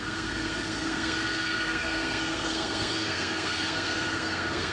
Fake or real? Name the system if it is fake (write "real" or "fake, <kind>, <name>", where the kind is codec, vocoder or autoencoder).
fake, codec, SNAC